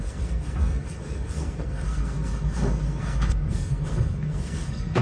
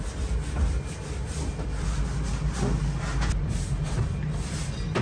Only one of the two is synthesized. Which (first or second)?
first